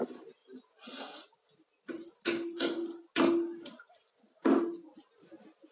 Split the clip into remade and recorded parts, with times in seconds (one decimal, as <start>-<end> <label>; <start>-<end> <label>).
0.0-5.7 recorded